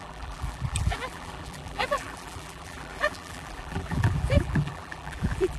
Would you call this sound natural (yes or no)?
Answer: no